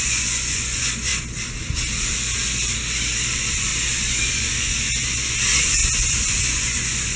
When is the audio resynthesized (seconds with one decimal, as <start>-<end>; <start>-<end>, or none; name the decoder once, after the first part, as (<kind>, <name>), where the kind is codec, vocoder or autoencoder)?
0.0-1.1 (vocoder, Vocos); 3.3-3.7; 4.3-5.8; 6.3-7.2